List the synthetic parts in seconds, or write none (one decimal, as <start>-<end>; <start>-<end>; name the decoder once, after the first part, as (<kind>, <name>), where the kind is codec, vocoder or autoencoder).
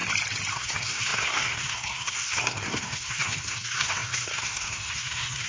0.5-5.5 (codec, SNAC)